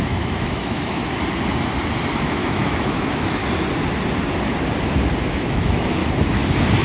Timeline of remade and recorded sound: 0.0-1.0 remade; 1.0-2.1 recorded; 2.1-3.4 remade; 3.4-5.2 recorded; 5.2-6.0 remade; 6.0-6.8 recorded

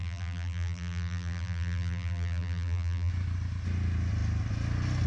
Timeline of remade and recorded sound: 0.0-3.1 remade; 3.1-5.1 recorded

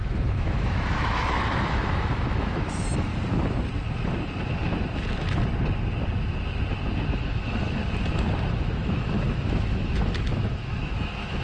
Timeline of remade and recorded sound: 0.0-3.1 remade; 3.1-7.1 recorded; 7.1-7.8 remade; 7.8-8.5 recorded; 8.5-11.4 remade

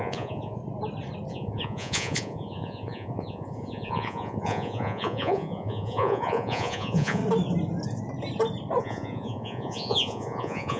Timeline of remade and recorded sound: 0.0-0.6 remade; 0.6-1.3 recorded; 1.3-7.2 remade; 7.2-8.8 recorded; 8.8-10.8 remade

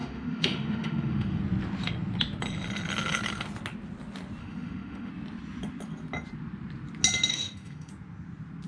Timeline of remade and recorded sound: 0.0-1.4 remade; 1.4-4.4 recorded; 4.4-5.1 remade; 5.1-7.3 recorded; 7.3-7.9 remade; 7.9-8.7 recorded

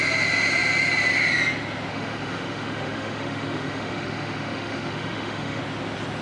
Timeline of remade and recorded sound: 0.0-1.9 recorded; 1.9-5.6 remade; 5.6-6.2 recorded

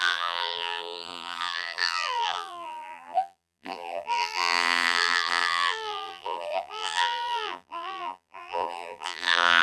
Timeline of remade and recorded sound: 0.0-9.6 remade